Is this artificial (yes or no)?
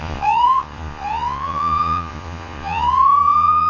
yes